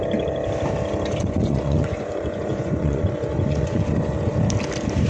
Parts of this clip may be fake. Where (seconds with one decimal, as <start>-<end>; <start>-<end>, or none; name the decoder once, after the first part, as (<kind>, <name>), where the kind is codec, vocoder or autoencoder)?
1.2-4.3 (vocoder, Vocos)